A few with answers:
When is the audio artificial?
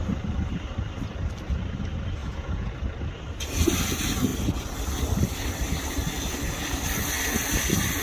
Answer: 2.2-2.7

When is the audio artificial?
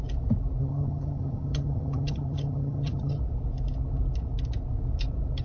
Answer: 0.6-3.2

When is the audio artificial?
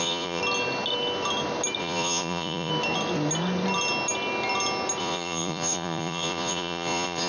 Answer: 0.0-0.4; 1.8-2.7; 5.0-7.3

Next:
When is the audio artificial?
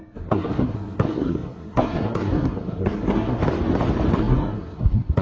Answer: 0.0-3.4; 4.2-5.2